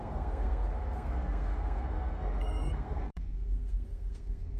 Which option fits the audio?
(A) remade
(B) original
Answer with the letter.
A